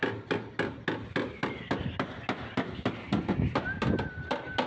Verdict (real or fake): real